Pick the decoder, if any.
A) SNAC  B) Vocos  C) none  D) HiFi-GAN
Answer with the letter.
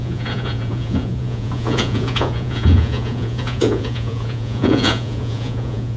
B